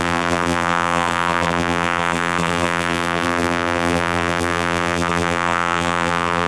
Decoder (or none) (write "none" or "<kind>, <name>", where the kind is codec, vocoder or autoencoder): vocoder, BigVGAN v2